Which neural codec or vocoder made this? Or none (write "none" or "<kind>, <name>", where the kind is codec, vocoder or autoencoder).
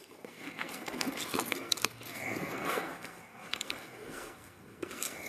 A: codec, SNAC